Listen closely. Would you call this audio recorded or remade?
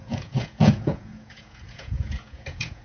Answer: remade